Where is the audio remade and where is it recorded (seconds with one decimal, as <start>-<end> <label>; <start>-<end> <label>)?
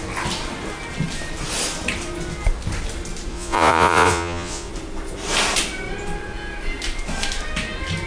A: 0.0-3.3 recorded; 3.3-4.7 remade; 4.7-8.1 recorded